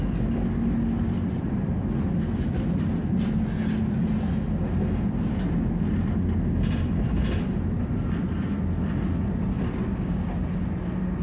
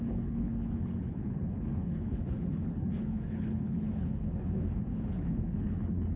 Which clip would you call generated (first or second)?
second